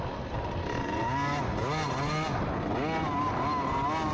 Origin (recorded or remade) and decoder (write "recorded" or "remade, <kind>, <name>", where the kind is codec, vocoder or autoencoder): recorded